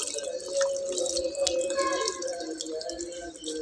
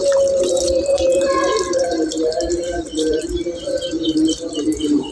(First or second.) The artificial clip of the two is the second